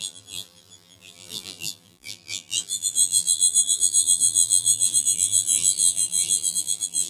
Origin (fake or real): fake